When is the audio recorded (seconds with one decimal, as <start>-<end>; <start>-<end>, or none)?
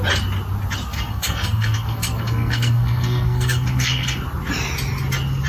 0.0-0.9; 4.2-5.5